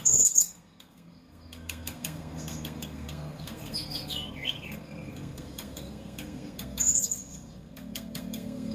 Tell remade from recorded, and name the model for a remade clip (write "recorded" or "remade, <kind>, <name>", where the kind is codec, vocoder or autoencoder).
remade, codec, SNAC